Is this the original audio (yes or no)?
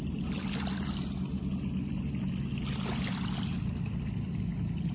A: yes